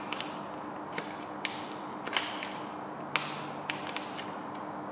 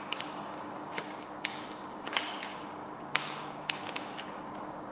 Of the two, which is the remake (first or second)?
second